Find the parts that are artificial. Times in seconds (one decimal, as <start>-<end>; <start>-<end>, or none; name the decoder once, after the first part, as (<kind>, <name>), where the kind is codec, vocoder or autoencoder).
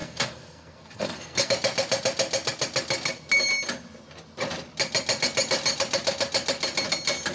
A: 0.0-1.5 (codec, SNAC)